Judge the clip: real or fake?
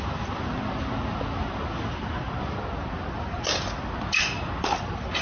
real